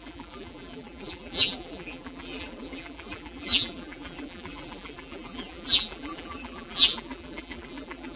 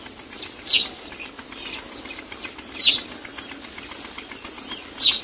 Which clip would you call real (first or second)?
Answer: second